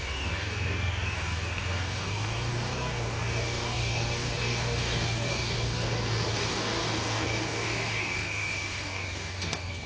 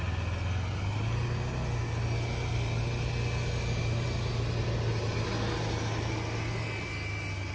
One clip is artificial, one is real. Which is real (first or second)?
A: second